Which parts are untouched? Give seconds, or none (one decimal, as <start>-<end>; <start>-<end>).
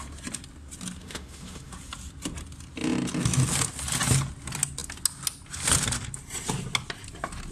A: 0.0-1.0; 1.7-7.5